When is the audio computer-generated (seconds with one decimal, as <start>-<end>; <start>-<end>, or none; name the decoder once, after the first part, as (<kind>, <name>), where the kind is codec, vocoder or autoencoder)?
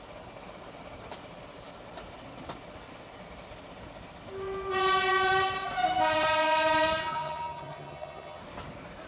7.0-8.4 (vocoder, HiFi-GAN)